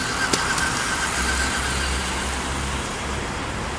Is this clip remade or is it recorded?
recorded